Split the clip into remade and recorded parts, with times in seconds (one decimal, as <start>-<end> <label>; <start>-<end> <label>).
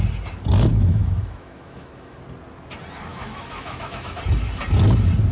0.0-0.7 recorded; 0.7-2.2 remade; 2.2-3.1 recorded; 3.1-4.2 remade; 4.2-5.3 recorded